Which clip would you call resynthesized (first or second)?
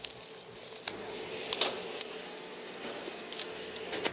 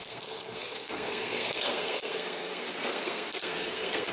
second